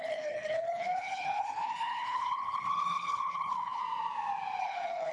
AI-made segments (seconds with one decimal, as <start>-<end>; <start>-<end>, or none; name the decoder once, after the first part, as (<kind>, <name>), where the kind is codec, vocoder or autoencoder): 0.0-3.8 (codec, HILCodec); 4.6-5.1